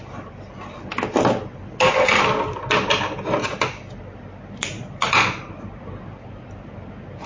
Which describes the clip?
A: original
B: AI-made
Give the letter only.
A